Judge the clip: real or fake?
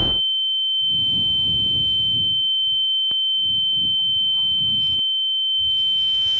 fake